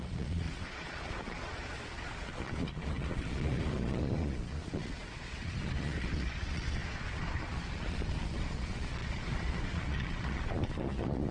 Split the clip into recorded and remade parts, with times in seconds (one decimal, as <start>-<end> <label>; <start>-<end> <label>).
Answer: 0.0-11.3 remade